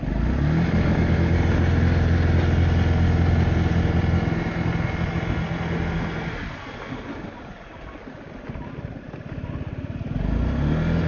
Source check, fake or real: real